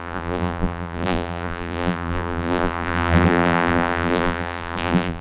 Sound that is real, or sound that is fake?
fake